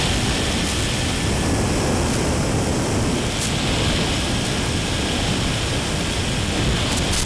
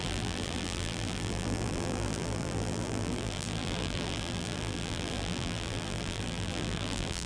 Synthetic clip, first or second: second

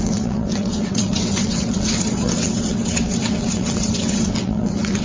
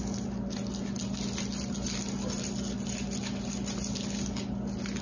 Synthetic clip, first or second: first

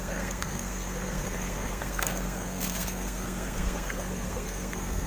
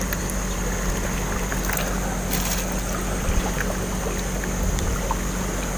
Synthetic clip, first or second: first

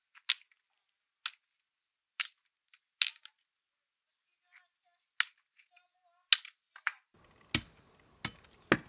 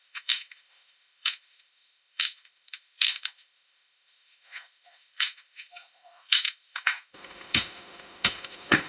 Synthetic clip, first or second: second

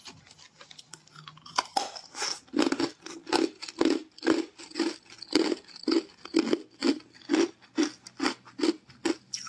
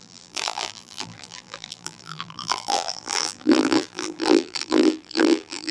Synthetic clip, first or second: second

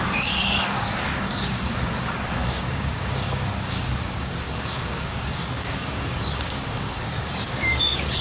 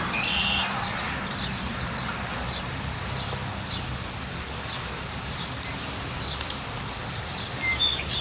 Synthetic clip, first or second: first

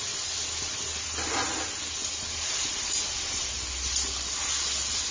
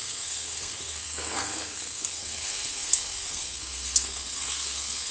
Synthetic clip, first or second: second